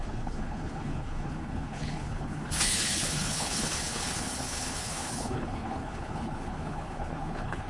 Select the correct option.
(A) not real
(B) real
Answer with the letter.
A